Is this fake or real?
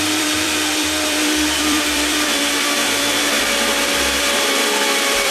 fake